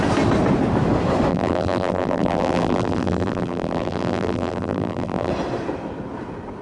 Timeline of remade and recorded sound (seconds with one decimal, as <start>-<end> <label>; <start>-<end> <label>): 0.0-1.3 recorded; 1.3-5.3 remade; 5.3-6.6 recorded